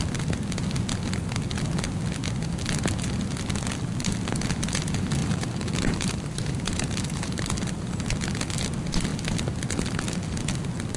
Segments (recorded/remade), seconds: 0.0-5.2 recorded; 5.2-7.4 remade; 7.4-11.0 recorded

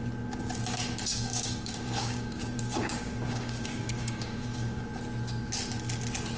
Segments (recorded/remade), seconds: 0.0-1.1 recorded; 1.1-4.8 remade; 4.8-6.4 recorded

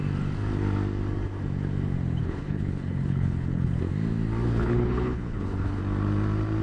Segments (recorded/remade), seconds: 0.0-2.2 recorded; 2.2-3.7 remade; 3.7-4.5 recorded; 4.5-5.8 remade; 5.8-6.6 recorded

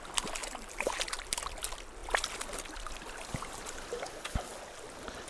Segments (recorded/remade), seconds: 0.0-0.4 recorded; 0.4-0.9 remade; 0.9-5.3 recorded

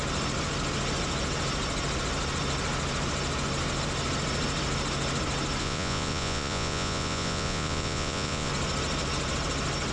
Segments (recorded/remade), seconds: 0.0-5.6 recorded; 5.6-8.5 remade; 8.5-9.9 recorded

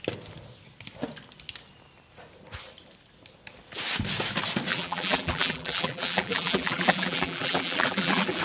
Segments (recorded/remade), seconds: 0.0-4.7 recorded; 4.7-8.4 remade

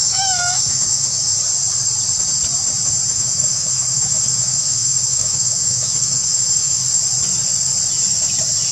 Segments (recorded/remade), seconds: 0.0-1.3 remade; 1.3-3.1 recorded; 3.1-6.8 remade; 6.8-8.7 recorded

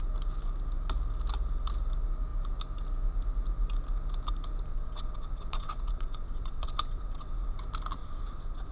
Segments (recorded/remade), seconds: 0.0-4.7 recorded; 4.7-7.6 remade; 7.6-8.0 recorded; 8.0-8.7 remade